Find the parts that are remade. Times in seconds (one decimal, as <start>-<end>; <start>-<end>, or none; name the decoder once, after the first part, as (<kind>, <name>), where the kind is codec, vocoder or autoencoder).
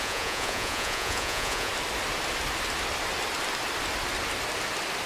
0.0-1.7 (vocoder, Vocos)